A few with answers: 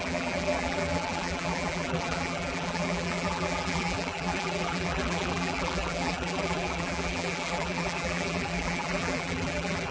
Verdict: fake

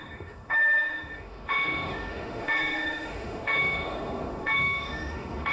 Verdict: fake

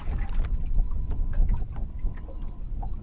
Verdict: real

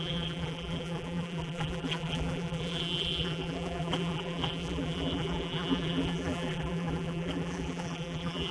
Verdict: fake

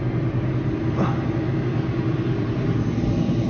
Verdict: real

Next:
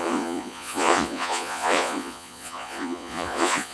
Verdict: fake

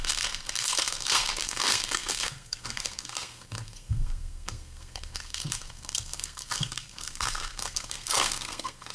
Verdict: fake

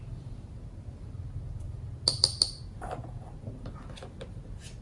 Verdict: real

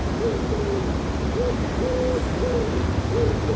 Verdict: real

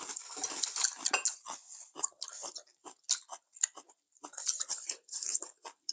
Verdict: real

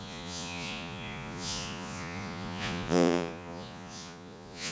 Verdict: fake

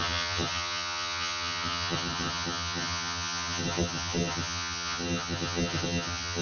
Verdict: fake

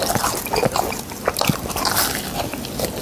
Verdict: real